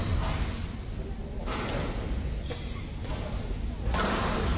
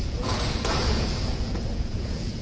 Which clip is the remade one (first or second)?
second